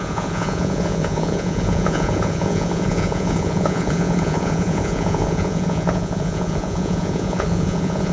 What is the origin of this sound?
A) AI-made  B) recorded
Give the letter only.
A